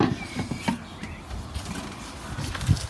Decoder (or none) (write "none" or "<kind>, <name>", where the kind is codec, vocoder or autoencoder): none